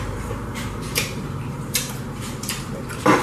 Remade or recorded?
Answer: remade